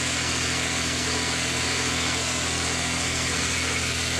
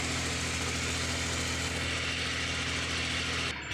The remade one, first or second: first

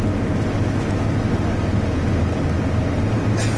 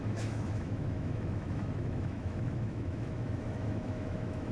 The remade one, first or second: second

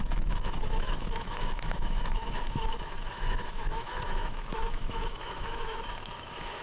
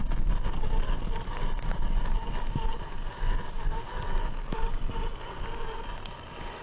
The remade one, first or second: first